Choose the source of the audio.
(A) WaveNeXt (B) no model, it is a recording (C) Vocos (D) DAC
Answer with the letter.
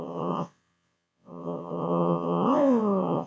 A